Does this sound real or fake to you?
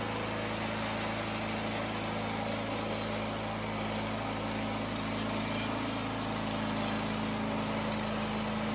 real